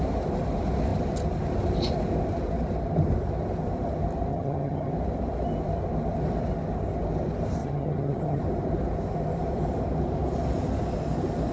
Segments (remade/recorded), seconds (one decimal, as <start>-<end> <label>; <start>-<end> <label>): 0.0-4.3 recorded; 4.3-4.9 remade; 4.9-7.6 recorded; 7.6-8.4 remade; 8.4-11.5 recorded